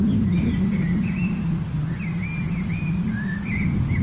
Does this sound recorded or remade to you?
recorded